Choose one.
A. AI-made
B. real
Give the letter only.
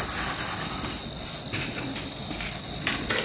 B